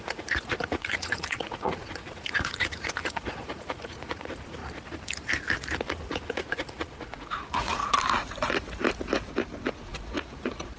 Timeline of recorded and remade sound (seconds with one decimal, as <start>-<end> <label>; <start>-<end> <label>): 0.0-4.6 remade; 4.6-5.8 recorded; 5.8-7.8 remade; 7.8-9.7 recorded; 9.7-10.8 remade